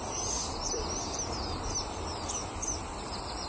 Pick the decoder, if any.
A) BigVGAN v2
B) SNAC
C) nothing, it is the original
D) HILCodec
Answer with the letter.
C